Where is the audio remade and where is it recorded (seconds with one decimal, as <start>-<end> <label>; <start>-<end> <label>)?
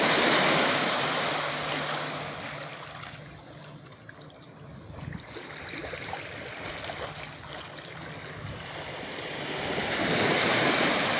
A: 0.0-11.2 recorded